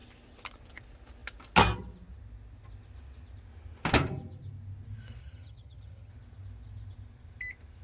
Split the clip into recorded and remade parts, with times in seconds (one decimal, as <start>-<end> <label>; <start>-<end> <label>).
0.0-5.2 recorded; 5.2-6.1 remade; 6.1-7.8 recorded